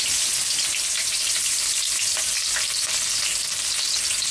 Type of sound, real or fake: real